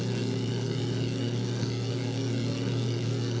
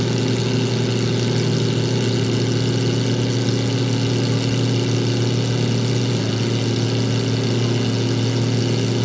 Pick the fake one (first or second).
first